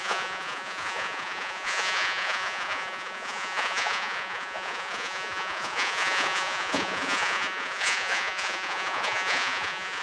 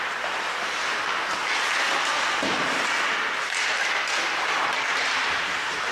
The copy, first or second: first